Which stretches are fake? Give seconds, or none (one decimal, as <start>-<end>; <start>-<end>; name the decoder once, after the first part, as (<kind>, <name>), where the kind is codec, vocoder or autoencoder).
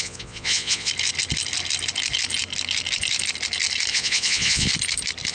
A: 0.0-0.9 (vocoder, Vocos); 3.9-4.7